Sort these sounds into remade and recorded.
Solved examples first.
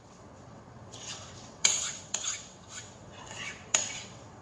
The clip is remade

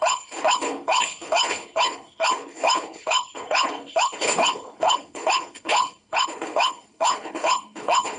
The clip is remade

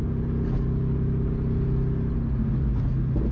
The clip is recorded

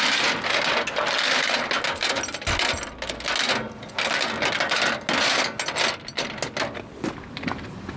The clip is recorded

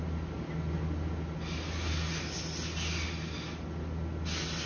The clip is recorded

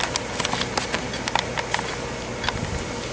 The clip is recorded